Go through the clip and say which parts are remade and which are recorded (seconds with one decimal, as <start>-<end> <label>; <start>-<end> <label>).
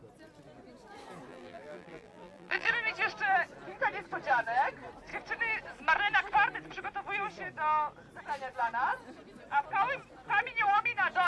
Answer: 0.0-1.3 recorded; 1.3-2.7 remade; 2.7-11.3 recorded